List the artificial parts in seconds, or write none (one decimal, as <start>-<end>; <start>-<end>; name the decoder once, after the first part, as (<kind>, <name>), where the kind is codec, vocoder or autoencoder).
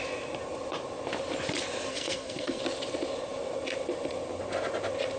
1.9-2.6 (codec, SNAC)